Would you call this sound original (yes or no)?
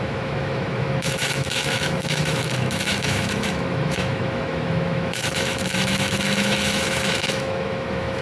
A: no